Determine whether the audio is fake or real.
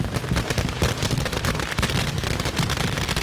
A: real